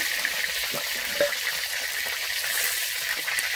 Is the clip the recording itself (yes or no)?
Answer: yes